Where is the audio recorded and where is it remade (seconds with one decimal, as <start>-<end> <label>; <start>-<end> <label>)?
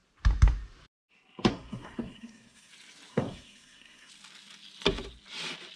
0.0-1.5 recorded; 1.5-2.7 remade; 2.7-3.1 recorded; 3.1-4.1 remade; 4.1-5.8 recorded